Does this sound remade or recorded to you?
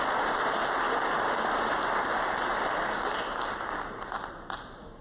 recorded